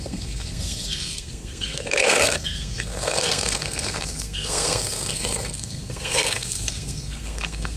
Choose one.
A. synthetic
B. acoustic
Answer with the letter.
A